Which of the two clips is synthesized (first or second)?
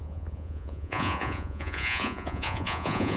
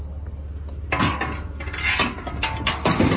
first